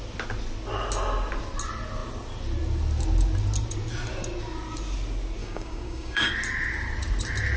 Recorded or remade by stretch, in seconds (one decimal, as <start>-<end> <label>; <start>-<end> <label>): 0.0-5.4 recorded; 5.4-6.3 remade; 6.3-7.6 recorded